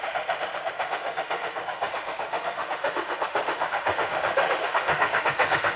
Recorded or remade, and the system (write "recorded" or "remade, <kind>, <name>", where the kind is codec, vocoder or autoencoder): remade, autoencoder, DAC-VAE